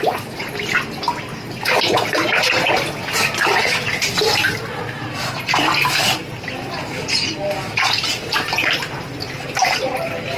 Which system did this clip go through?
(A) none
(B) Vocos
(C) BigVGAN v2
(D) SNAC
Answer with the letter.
A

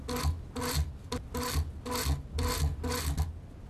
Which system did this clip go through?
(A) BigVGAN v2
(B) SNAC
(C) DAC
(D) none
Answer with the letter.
D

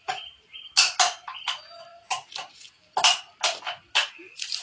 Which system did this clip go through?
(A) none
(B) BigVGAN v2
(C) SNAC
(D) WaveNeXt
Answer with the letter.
A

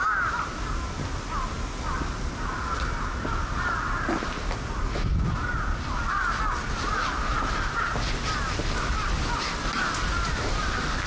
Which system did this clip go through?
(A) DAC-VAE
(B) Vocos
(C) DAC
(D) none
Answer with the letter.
D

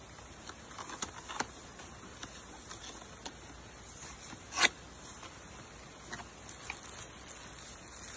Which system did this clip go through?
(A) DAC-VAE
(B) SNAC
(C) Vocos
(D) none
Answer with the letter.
D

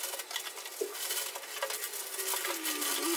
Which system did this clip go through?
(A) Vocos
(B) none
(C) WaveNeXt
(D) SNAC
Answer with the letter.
B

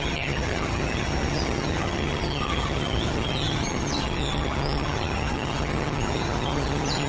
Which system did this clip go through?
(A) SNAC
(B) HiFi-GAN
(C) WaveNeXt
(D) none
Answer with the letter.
B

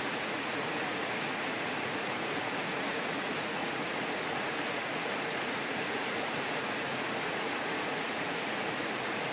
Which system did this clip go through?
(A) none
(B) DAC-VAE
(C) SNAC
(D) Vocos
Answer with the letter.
D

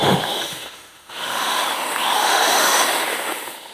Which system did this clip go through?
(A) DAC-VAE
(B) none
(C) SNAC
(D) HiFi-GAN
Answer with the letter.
A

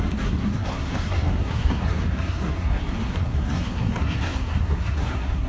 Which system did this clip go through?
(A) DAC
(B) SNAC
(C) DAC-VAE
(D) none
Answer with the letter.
B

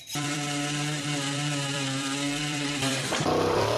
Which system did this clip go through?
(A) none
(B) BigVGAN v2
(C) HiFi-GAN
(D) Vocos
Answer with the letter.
B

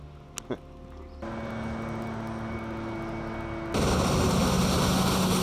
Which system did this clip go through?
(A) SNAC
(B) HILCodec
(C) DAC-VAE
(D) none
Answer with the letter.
D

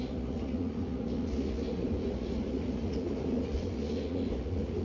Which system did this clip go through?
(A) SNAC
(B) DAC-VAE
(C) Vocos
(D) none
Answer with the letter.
C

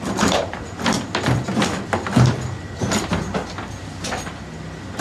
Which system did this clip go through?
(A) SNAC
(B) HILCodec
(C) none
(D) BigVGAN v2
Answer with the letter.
D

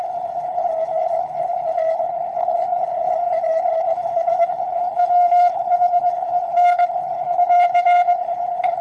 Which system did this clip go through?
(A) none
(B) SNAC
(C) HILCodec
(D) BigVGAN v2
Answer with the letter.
C